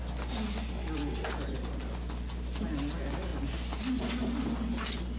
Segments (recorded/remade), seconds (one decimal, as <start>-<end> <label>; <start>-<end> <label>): 0.0-5.2 recorded